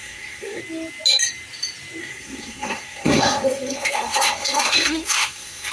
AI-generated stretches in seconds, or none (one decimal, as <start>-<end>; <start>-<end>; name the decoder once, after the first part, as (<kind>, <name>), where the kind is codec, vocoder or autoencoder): 0.0-0.6 (codec, SNAC); 2.0-5.7